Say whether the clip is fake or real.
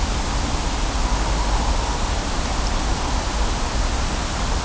real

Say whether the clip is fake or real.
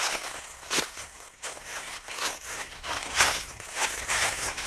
fake